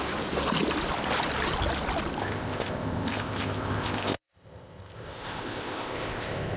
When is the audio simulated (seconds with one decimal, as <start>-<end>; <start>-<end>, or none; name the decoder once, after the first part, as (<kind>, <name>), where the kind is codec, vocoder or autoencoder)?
2.2-6.6 (codec, ZipCodec)